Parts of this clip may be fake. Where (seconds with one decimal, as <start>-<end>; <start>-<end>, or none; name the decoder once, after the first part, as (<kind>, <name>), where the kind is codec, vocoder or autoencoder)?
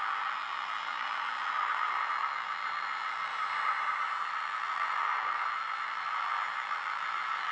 0.0-3.3 (vocoder, BigVGAN v2); 4.3-7.5